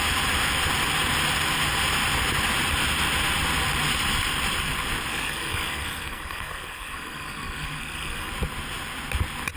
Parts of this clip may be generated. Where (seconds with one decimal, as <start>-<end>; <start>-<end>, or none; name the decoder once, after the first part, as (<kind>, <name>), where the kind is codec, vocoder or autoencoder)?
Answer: 5.1-8.3 (codec, SNAC)